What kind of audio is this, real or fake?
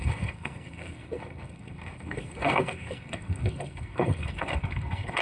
fake